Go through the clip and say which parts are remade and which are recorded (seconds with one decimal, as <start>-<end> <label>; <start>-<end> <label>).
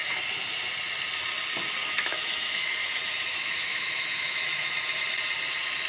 0.0-1.8 recorded; 1.8-2.7 remade; 2.7-3.3 recorded; 3.3-4.4 remade; 4.4-5.9 recorded